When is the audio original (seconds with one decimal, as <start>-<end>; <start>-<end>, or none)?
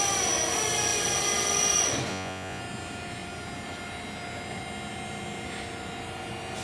0.0-2.1; 2.6-6.6